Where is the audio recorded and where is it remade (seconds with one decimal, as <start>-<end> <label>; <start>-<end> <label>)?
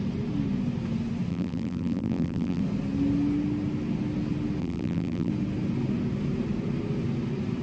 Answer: 0.0-1.3 recorded; 1.3-2.6 remade; 2.6-4.6 recorded; 4.6-5.3 remade; 5.3-7.6 recorded